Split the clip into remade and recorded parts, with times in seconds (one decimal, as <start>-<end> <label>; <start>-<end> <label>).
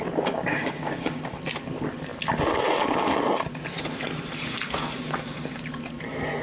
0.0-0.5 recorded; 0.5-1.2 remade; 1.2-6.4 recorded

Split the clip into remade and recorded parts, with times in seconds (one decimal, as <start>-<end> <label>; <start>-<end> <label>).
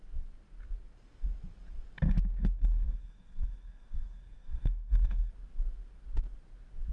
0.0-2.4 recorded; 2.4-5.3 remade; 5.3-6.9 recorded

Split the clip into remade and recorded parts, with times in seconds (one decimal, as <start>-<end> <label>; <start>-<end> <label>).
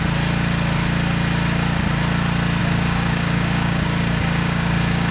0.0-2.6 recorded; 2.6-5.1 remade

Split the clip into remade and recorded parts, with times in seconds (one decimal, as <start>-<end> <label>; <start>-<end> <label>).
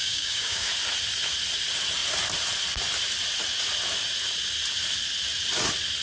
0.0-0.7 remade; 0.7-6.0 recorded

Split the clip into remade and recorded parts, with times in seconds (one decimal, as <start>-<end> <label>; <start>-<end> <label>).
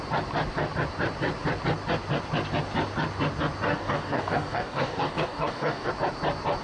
0.0-3.7 recorded; 3.7-5.9 remade; 5.9-6.6 recorded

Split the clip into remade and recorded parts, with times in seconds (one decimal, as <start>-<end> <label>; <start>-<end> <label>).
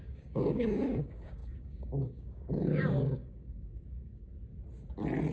0.0-4.3 remade; 4.3-5.3 recorded